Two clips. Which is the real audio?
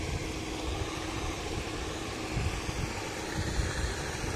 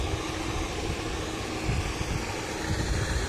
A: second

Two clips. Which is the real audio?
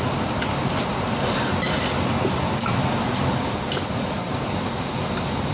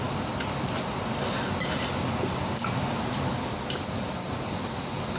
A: second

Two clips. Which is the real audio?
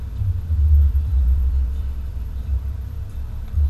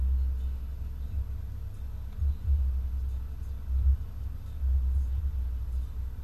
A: second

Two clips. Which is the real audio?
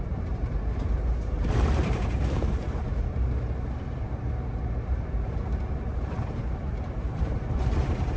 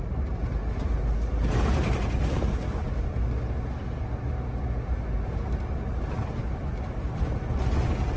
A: second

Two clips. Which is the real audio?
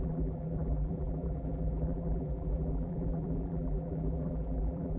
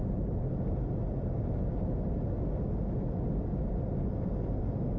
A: second